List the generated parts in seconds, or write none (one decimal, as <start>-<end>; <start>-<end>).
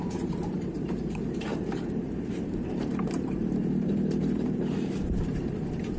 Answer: 0.0-6.0